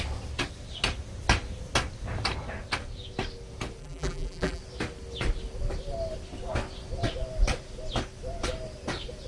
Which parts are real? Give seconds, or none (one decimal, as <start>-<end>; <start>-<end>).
0.0-3.8; 4.6-9.3

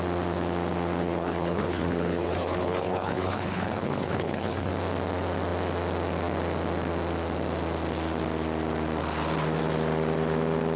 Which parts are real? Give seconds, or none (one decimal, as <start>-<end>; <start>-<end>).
0.0-1.0; 4.7-10.8

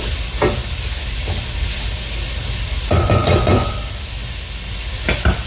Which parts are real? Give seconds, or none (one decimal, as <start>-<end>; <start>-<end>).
0.0-3.0; 3.7-5.5

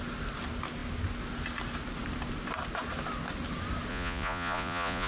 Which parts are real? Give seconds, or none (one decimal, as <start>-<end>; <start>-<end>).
0.0-3.9